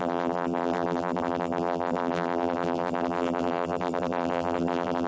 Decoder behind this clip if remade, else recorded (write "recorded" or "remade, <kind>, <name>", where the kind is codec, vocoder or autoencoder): remade, vocoder, BigVGAN v2